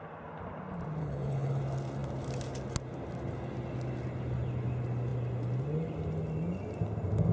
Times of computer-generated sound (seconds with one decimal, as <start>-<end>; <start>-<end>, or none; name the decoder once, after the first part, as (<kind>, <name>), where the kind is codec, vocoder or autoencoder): 1.0-1.6 (codec, HILCodec)